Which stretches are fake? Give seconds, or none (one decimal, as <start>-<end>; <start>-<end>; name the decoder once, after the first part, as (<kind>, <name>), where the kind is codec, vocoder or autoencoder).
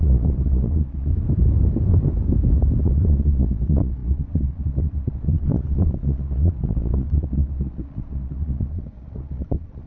0.0-1.1 (vocoder, Vocos); 2.8-9.9